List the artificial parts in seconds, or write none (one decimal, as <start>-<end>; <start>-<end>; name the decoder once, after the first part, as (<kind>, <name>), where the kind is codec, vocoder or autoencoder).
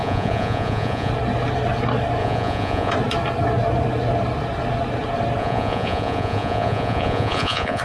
0.0-1.1 (vocoder, Vocos); 2.2-2.9; 5.4-7.8